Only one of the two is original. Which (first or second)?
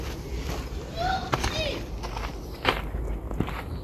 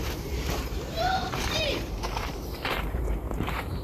first